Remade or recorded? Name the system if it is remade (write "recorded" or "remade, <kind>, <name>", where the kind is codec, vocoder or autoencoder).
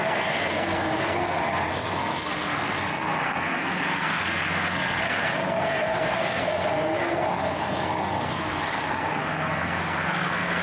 remade, codec, SNAC